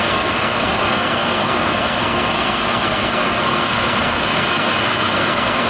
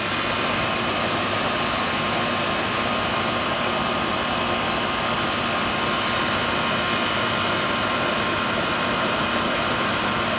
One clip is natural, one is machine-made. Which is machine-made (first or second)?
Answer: first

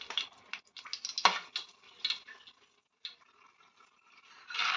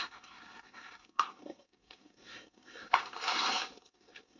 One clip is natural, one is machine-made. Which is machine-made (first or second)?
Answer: second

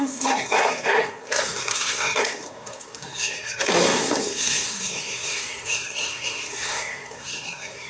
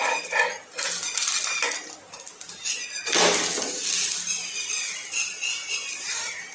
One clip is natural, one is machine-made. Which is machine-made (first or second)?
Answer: first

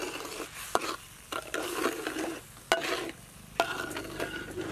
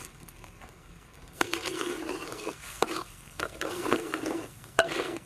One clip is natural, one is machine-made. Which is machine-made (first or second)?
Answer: second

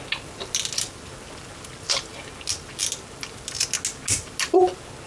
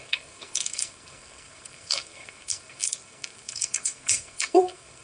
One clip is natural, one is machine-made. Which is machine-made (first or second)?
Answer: second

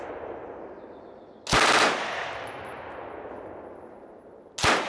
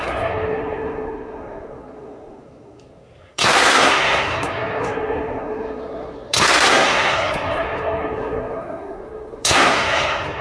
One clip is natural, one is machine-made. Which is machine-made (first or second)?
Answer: second